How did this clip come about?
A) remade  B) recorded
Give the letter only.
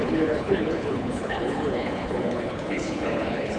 A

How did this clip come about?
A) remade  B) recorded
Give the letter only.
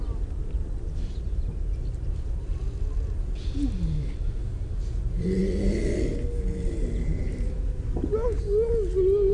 B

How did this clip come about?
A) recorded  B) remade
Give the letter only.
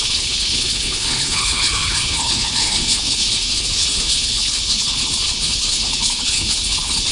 B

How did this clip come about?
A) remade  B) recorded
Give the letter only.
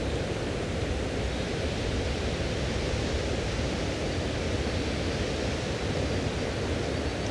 B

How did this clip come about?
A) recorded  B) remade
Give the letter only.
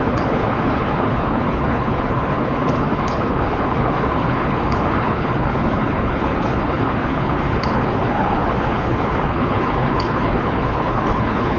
B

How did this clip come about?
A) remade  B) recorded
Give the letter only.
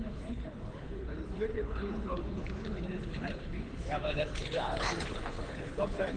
A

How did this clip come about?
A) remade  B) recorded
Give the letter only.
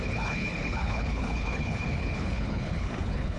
A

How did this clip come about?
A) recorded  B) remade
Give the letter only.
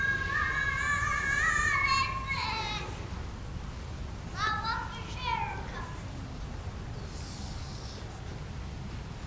A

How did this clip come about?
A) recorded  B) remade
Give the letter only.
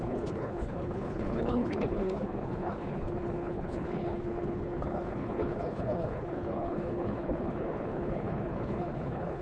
B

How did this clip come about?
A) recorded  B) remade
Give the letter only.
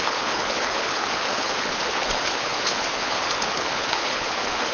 B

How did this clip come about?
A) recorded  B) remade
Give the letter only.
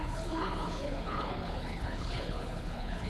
B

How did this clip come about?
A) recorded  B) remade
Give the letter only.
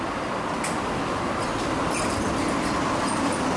A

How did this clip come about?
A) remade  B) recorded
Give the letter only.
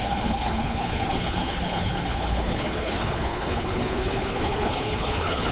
A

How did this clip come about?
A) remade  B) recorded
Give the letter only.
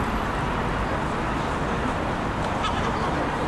B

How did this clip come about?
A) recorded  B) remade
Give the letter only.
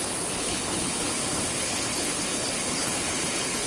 B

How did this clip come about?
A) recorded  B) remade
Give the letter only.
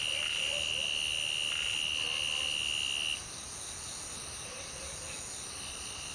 A